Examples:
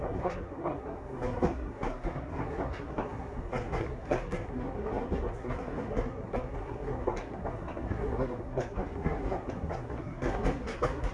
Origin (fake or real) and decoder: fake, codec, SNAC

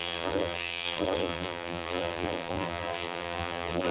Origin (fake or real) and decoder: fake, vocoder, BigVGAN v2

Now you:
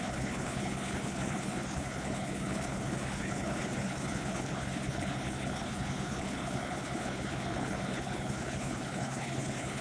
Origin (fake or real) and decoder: fake, codec, HILCodec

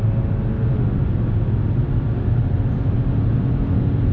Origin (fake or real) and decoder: real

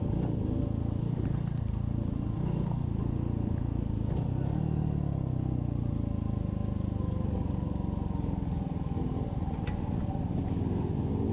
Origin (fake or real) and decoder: real